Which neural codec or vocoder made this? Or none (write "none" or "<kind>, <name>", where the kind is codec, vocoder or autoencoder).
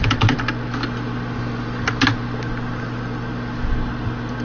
none